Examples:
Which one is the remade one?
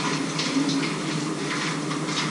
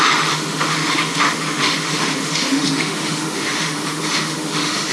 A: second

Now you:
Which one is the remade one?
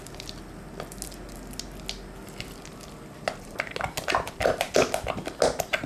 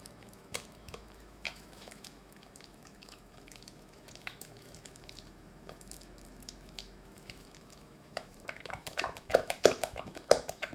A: second